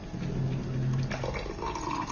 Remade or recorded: recorded